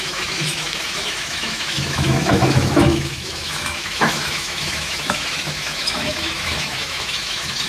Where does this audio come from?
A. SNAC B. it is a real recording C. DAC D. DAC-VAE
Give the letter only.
D